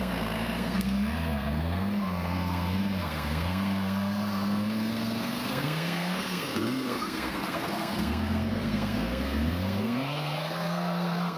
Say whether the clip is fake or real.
fake